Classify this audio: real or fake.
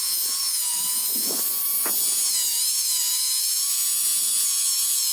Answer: fake